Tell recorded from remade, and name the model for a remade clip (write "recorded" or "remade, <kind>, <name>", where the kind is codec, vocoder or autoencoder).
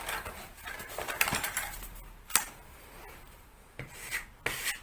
recorded